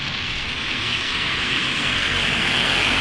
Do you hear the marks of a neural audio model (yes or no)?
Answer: yes